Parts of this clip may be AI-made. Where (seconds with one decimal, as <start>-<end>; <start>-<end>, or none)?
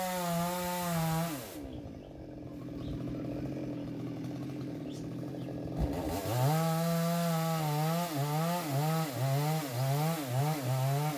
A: none